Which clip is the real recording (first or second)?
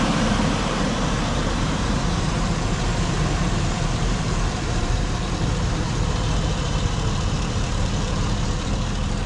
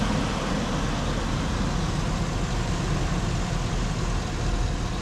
second